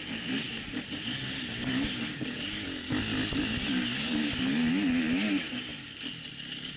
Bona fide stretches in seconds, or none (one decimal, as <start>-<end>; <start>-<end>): 0.0-6.8